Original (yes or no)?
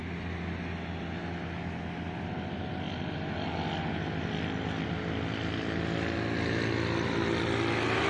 yes